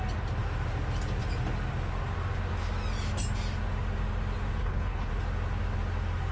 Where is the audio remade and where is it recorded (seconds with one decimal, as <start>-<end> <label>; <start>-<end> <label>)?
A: 0.0-4.6 recorded; 4.6-5.1 remade; 5.1-6.3 recorded